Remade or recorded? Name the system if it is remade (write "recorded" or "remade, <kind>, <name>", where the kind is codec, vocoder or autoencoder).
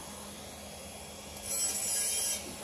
recorded